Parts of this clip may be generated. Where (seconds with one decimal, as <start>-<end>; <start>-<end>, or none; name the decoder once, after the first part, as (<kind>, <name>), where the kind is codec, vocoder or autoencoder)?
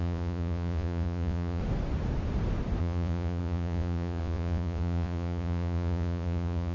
0.0-1.6 (vocoder, Vocos); 2.8-6.7